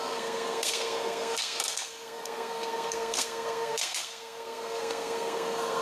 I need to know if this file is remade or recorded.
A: remade